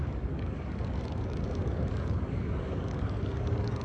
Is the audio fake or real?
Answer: fake